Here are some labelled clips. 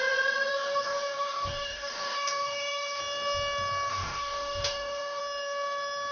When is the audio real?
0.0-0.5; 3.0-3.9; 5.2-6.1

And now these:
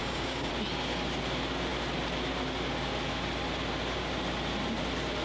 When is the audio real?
0.5-5.2

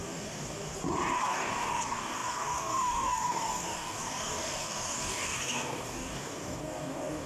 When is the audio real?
0.7-1.2